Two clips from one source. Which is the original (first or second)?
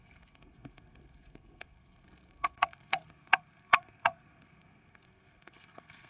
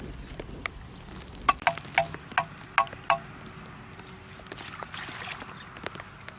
second